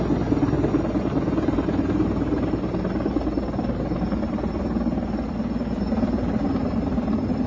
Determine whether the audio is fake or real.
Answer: real